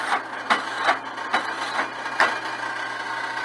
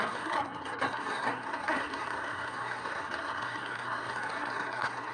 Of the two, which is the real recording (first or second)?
first